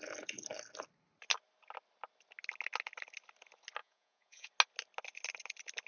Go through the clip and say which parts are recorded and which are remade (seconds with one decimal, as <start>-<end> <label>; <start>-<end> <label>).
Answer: 0.0-3.8 recorded; 3.8-4.5 remade; 4.5-5.9 recorded